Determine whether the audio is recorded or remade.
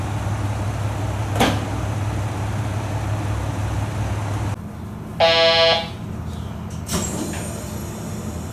recorded